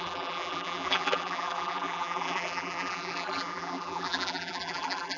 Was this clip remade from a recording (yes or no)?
yes